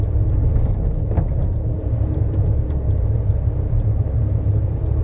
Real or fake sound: fake